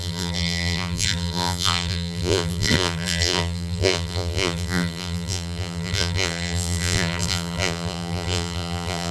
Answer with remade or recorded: remade